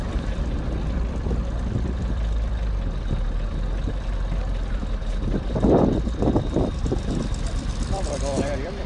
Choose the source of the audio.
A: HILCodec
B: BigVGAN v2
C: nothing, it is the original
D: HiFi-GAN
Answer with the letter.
B